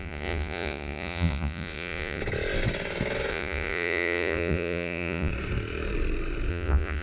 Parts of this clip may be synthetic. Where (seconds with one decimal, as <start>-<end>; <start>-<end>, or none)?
0.0-2.2; 3.3-5.3; 6.5-7.0